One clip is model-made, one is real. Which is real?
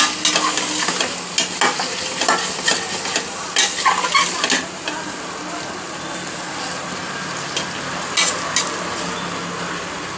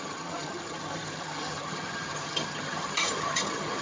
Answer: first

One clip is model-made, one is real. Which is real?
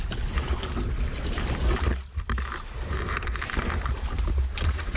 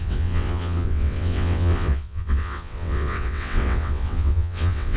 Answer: first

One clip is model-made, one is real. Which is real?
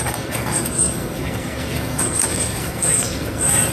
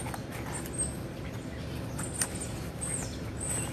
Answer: second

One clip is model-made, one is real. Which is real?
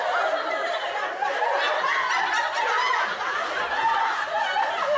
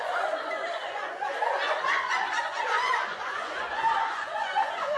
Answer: first